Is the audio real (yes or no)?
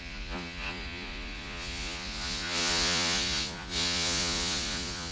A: no